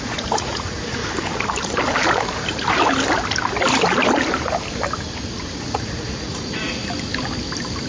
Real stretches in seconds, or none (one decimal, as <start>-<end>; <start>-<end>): 1.0-5.5; 6.8-7.9